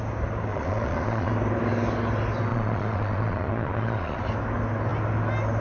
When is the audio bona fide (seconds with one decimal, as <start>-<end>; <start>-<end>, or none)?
0.0-0.5; 1.3-2.5; 4.2-5.6